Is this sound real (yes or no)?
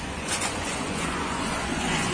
no